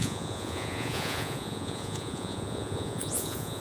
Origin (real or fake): fake